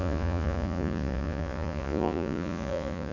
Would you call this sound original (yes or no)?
no